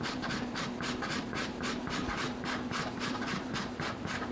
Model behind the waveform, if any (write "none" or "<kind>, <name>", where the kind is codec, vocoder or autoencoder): vocoder, BigVGAN v2